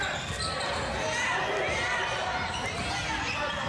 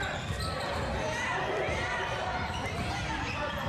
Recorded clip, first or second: first